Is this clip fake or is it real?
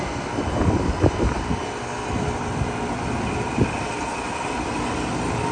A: real